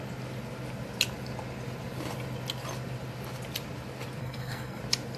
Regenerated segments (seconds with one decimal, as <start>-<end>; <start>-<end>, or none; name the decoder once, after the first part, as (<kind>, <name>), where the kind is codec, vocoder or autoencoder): 4.2-4.8 (codec, SNAC)